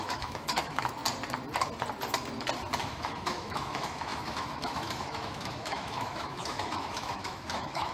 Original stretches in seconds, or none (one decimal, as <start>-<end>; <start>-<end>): 1.0-2.8